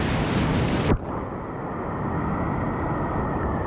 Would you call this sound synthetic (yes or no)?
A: no